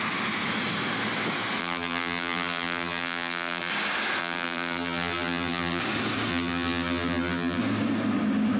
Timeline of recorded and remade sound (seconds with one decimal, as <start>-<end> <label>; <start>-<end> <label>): 0.0-1.6 recorded; 1.6-3.7 remade; 3.7-4.2 recorded; 4.2-5.8 remade; 5.8-6.3 recorded; 6.3-7.6 remade; 7.6-8.6 recorded